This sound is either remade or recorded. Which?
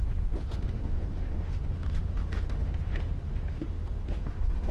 remade